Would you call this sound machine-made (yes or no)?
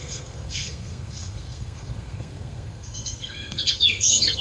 yes